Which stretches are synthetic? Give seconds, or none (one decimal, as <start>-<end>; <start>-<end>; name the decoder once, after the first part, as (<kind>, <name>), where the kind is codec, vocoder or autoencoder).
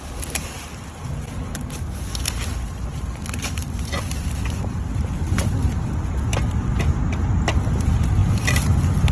none